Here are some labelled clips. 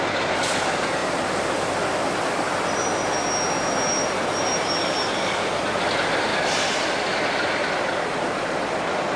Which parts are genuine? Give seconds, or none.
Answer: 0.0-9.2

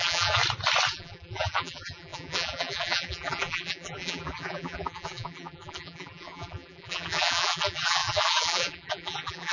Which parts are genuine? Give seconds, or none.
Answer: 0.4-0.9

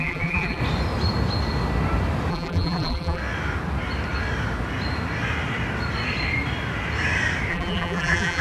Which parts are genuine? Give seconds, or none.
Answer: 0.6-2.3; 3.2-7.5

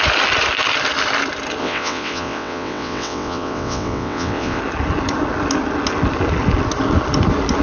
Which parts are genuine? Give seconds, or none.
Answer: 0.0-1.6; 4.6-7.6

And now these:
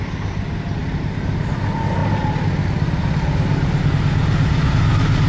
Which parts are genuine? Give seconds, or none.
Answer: 0.0-5.3